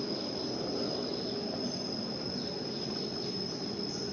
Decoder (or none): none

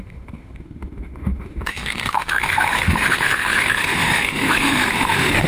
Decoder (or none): autoencoder, DAC-VAE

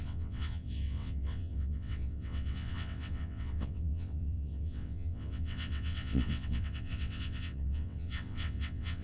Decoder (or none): vocoder, WaveNeXt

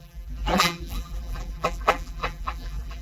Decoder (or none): vocoder, BigVGAN v2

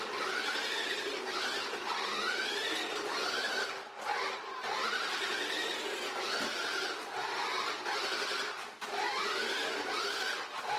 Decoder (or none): none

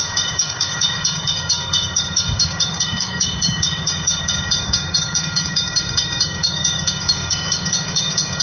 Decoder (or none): codec, DAC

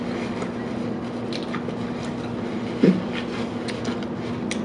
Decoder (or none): none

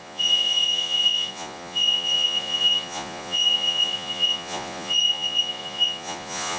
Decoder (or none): vocoder, Vocos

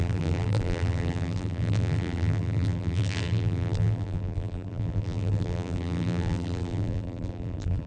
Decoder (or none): vocoder, BigVGAN v2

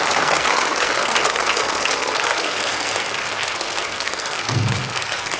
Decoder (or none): codec, SNAC